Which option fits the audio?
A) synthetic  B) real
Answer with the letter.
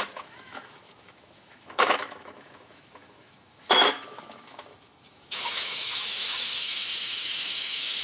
A